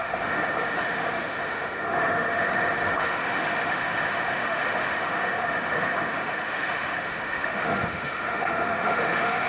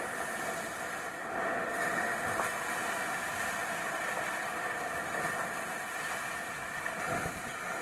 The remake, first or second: first